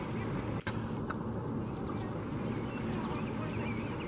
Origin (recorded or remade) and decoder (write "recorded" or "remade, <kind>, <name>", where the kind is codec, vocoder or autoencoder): recorded